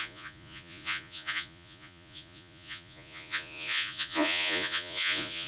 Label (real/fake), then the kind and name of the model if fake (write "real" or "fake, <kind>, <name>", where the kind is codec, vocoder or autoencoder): fake, vocoder, Vocos